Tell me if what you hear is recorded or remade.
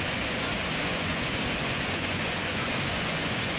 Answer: remade